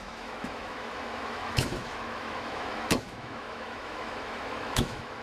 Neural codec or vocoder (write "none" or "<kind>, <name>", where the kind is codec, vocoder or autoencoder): autoencoder, DAC-VAE